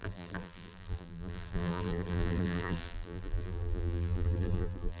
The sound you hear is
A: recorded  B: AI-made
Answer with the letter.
B